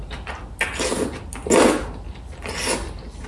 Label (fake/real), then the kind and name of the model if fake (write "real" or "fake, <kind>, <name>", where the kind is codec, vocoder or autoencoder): real